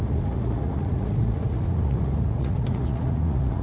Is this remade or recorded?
remade